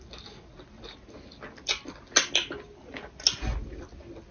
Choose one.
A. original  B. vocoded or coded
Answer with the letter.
A